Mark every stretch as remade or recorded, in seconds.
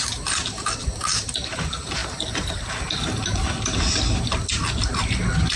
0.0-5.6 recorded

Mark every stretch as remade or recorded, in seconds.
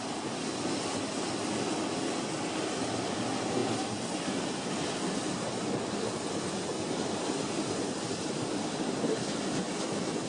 0.0-10.3 recorded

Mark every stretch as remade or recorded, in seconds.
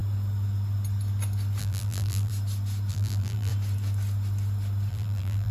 0.0-1.6 recorded; 1.6-2.3 remade; 2.3-2.9 recorded; 2.9-3.5 remade; 3.5-4.9 recorded; 4.9-5.5 remade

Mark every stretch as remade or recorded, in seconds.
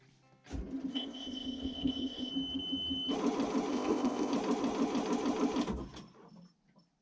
0.0-0.9 recorded; 0.9-2.3 remade; 2.3-3.7 recorded; 3.7-4.3 remade; 4.3-7.0 recorded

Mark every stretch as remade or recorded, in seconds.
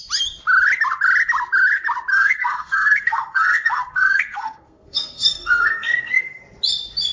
0.0-2.1 recorded; 2.1-6.4 remade; 6.4-7.1 recorded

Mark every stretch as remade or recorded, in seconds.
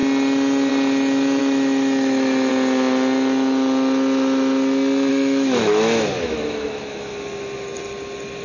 0.0-1.4 recorded; 1.4-2.5 remade; 2.5-5.1 recorded; 5.1-7.1 remade; 7.1-8.4 recorded